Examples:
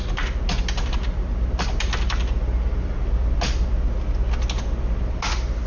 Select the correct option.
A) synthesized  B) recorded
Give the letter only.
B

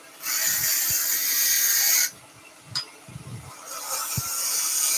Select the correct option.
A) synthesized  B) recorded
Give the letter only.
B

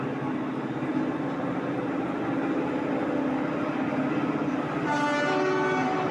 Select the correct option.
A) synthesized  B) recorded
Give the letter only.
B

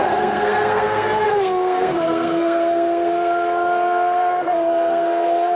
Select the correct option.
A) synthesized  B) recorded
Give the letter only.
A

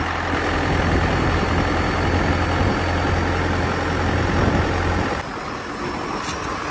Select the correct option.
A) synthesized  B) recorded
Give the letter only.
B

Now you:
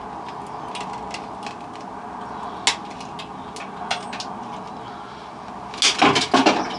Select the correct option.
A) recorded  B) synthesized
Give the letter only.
A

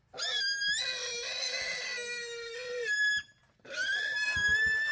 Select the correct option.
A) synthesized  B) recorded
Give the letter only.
B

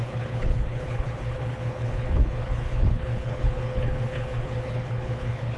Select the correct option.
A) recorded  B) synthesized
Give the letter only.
B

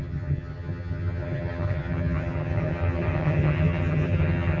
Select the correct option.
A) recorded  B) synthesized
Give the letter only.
B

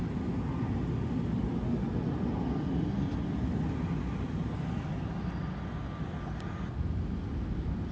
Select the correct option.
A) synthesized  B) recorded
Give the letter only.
B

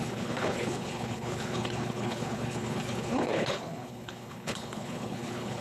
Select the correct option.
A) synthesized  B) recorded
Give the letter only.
A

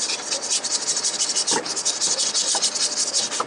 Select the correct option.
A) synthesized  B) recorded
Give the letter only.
B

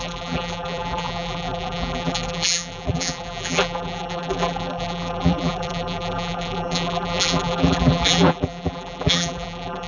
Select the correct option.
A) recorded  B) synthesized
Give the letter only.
B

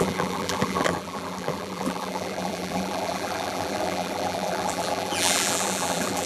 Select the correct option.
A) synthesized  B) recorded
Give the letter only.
A